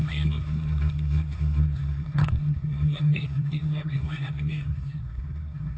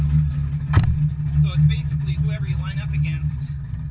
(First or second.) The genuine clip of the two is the second